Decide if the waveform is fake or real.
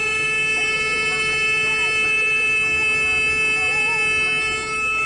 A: real